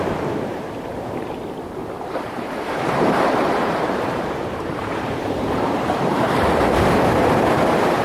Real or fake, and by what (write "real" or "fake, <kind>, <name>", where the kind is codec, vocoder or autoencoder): fake, vocoder, BigVGAN v2